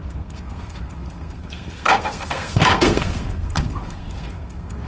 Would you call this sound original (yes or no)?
no